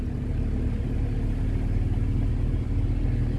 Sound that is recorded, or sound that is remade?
recorded